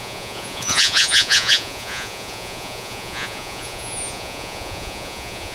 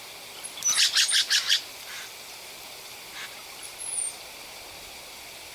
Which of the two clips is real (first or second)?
second